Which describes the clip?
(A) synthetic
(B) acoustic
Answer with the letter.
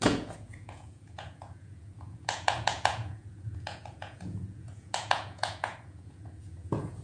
A